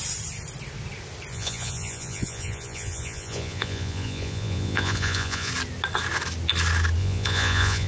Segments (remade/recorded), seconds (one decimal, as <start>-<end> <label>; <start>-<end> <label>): 0.0-1.3 recorded; 1.3-5.5 remade; 5.5-7.0 recorded; 7.0-7.9 remade